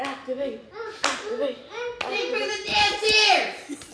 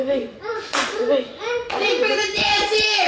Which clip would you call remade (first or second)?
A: second